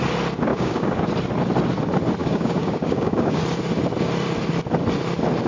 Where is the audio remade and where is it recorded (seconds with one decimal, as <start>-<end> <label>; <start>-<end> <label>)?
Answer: 0.0-0.5 recorded; 0.5-1.1 remade; 1.1-2.2 recorded; 2.2-3.4 remade; 3.4-5.5 recorded

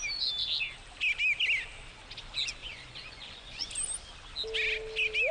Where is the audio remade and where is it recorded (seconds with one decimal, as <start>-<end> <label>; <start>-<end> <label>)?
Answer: 0.0-2.6 recorded; 2.6-3.7 remade; 3.7-5.3 recorded

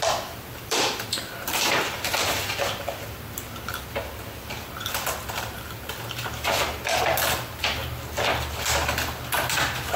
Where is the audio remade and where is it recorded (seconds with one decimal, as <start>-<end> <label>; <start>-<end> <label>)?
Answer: 0.0-7.8 remade; 7.8-8.3 recorded; 8.3-10.0 remade

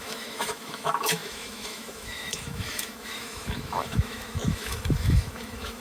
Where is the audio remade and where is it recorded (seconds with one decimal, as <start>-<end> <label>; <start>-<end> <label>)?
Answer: 0.0-5.8 remade